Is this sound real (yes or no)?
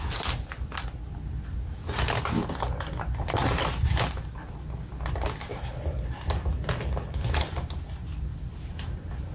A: yes